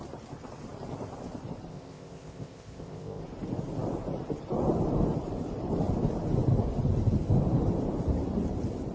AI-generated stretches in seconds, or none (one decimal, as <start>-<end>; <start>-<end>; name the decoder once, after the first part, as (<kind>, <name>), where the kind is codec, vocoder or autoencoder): 1.7-3.2 (codec, ZipCodec)